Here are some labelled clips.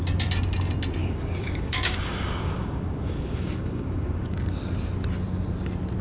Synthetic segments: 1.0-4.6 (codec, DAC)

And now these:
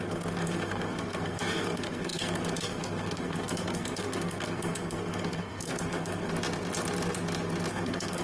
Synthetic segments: 0.0-6.3 (codec, SNAC); 7.7-8.2